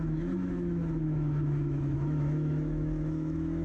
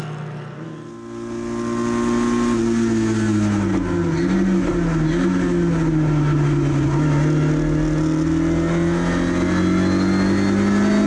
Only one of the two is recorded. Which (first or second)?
second